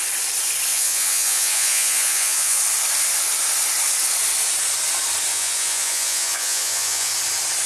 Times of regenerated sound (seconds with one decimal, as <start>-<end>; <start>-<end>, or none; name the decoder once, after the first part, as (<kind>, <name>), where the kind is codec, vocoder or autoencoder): 0.7-2.6 (vocoder, Vocos); 5.3-7.1

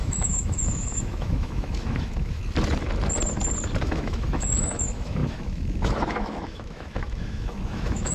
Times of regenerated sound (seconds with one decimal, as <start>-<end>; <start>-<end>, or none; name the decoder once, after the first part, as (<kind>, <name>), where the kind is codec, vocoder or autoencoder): 0.0-2.4 (autoencoder, DAC-VAE); 3.8-8.1

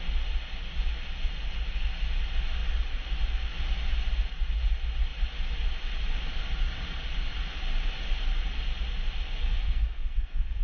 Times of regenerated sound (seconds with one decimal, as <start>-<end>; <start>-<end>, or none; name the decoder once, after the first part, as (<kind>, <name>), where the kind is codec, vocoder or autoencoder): 9.4-10.6 (codec, SNAC)

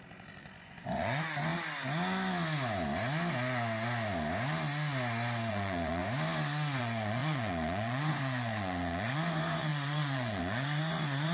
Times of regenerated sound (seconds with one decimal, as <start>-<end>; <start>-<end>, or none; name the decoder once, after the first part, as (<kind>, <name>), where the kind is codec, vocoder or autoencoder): 0.0-1.5 (vocoder, Vocos); 5.5-6.0; 6.8-11.3

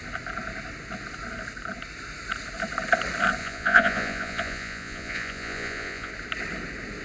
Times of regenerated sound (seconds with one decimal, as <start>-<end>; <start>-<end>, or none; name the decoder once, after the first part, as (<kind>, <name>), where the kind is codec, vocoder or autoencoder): 3.4-6.1 (vocoder, Vocos)

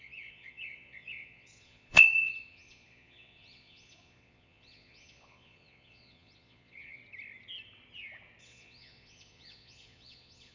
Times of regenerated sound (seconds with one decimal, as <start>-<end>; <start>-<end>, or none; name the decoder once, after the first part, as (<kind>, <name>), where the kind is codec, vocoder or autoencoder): 0.0-7.0 (vocoder, Vocos); 8.4-10.5

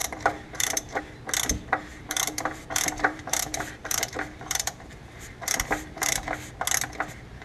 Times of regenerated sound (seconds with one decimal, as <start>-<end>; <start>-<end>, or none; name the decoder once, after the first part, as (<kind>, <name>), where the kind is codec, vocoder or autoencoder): 0.0-1.0 (vocoder, BigVGAN v2); 1.9-6.3

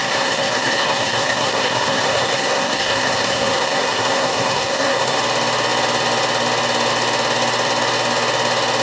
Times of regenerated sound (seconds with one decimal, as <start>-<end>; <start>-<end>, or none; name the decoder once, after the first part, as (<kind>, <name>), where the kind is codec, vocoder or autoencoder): 0.0-5.2 (codec, SNAC)